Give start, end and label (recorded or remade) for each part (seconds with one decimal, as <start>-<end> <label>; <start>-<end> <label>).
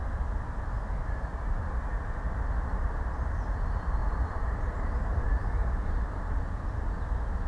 0.0-4.0 recorded; 4.0-6.4 remade; 6.4-7.5 recorded